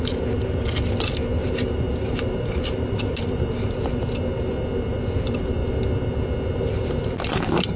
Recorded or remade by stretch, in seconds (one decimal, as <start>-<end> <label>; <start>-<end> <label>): 0.0-1.4 recorded; 1.4-3.9 remade; 3.9-7.8 recorded